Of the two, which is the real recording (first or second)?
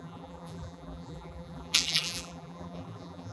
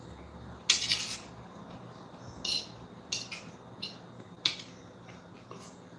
second